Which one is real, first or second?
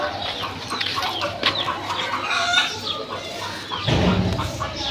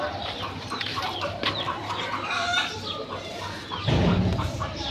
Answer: first